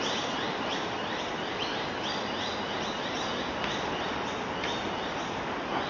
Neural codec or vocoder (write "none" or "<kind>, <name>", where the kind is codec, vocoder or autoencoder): none